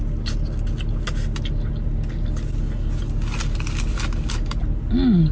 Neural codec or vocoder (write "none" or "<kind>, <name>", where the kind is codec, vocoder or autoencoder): none